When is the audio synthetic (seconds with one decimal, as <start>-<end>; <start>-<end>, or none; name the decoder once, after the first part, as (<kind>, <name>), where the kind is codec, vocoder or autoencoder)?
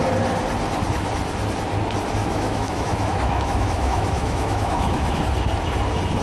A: 2.2-5.2 (autoencoder, DAC-VAE)